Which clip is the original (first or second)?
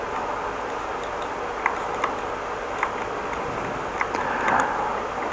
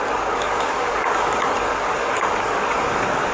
first